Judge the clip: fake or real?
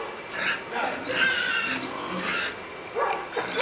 real